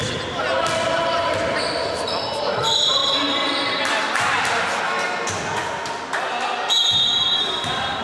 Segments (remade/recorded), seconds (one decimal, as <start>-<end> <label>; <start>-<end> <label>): 0.0-8.0 recorded